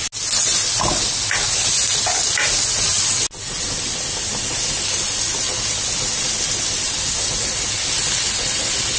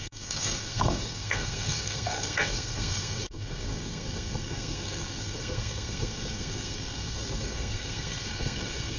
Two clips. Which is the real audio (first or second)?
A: first